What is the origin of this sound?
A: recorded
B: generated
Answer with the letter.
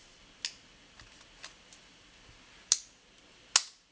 A